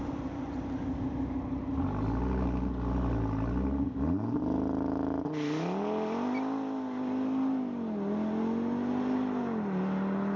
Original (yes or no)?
yes